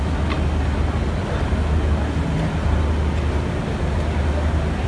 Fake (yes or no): no